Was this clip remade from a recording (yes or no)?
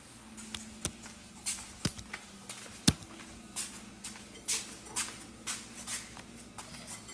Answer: no